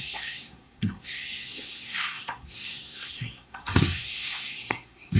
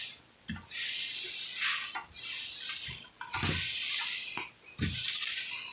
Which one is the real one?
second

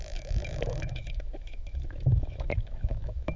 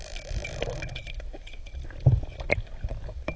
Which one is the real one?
second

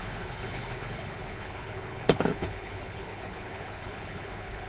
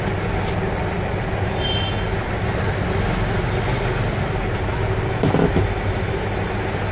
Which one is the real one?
second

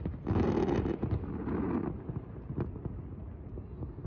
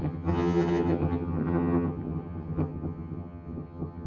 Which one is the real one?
first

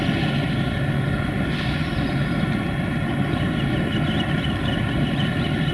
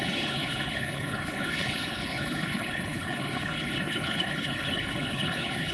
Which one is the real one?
first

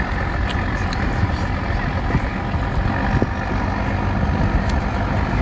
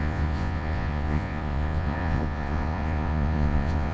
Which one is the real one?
first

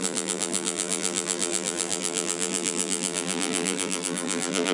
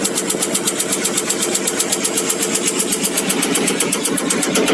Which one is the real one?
second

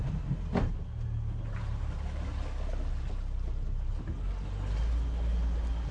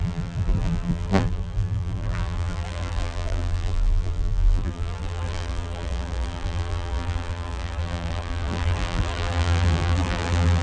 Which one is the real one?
first